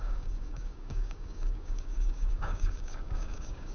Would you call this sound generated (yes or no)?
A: yes